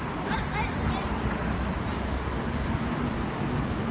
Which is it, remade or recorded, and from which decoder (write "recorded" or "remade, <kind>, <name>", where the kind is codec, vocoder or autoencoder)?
recorded